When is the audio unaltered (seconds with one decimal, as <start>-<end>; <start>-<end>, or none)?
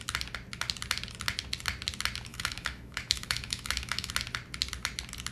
0.0-2.3; 4.1-5.3